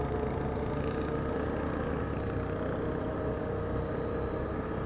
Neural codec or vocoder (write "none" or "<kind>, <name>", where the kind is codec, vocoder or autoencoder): none